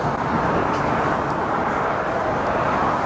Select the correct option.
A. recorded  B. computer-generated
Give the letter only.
A